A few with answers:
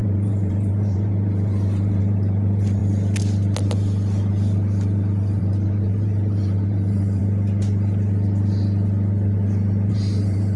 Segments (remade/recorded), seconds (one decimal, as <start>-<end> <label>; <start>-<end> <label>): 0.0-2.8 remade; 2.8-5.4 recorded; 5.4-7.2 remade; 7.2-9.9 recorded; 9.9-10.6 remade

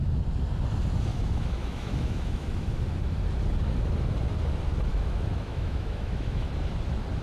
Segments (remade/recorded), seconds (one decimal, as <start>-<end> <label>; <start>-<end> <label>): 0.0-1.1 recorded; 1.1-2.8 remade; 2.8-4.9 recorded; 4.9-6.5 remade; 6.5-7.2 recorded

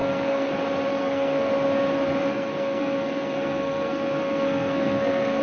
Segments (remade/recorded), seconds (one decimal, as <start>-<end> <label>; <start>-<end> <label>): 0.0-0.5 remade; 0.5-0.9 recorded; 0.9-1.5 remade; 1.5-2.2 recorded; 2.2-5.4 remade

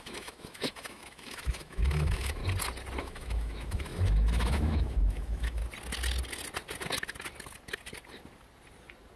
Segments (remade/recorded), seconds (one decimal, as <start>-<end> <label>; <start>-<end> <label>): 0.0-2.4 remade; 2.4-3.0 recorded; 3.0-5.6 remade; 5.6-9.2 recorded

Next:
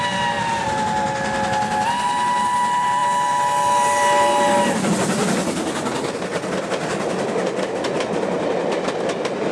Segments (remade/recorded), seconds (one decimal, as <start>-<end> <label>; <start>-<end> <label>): 0.0-9.5 recorded

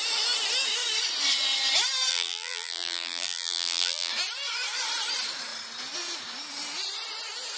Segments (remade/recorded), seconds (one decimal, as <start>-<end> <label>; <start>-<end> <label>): 0.0-2.1 recorded; 2.1-4.1 remade; 4.1-7.6 recorded